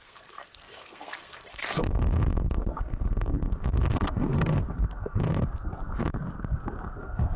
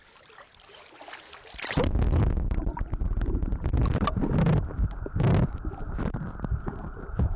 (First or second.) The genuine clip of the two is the second